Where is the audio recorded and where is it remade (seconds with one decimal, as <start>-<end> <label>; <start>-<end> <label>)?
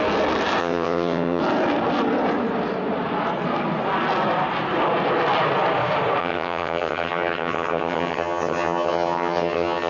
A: 0.0-0.6 recorded; 0.6-1.4 remade; 1.4-6.2 recorded; 6.2-9.9 remade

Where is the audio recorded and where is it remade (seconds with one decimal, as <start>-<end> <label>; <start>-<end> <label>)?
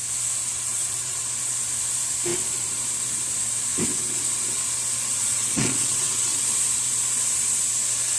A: 0.0-0.7 recorded; 0.7-1.2 remade; 1.2-5.1 recorded; 5.1-6.4 remade; 6.4-8.2 recorded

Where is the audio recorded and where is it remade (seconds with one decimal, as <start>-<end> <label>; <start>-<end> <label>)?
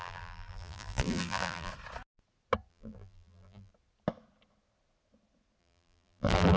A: 0.0-1.7 remade; 1.7-2.7 recorded; 2.7-3.7 remade; 3.7-5.6 recorded; 5.6-6.6 remade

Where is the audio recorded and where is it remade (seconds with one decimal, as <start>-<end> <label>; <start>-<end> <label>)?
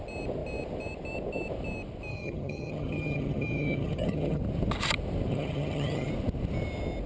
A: 0.0-2.1 recorded; 2.1-4.4 remade; 4.4-5.3 recorded; 5.3-6.1 remade; 6.1-7.1 recorded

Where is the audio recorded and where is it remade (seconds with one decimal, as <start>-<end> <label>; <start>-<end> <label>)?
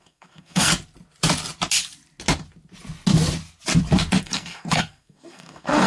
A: 0.0-0.7 remade; 0.7-4.2 recorded; 4.2-5.9 remade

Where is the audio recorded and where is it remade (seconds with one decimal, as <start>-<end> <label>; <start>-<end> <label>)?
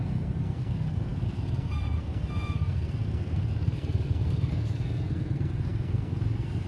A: 0.0-6.7 remade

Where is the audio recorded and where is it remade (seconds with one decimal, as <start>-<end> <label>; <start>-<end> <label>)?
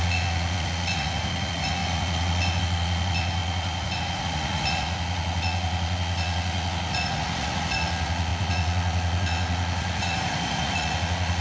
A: 0.0-11.4 remade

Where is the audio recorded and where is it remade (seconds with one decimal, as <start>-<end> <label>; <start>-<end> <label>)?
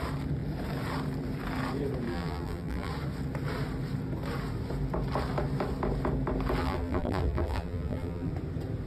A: 0.0-2.1 recorded; 2.1-2.9 remade; 2.9-6.6 recorded; 6.6-8.3 remade; 8.3-8.9 recorded